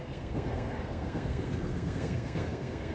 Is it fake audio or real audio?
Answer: fake